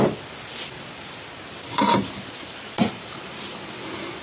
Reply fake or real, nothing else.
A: real